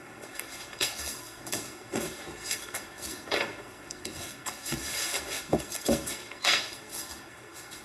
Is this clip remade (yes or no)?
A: yes